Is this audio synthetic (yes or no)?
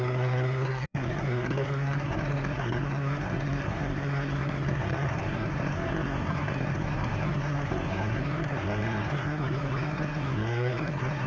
yes